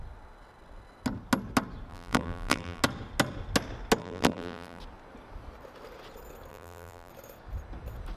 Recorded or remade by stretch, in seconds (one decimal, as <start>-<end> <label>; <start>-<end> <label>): 0.0-1.9 recorded; 1.9-2.8 remade; 2.8-4.0 recorded; 4.0-4.8 remade; 4.8-6.5 recorded; 6.5-7.1 remade; 7.1-8.2 recorded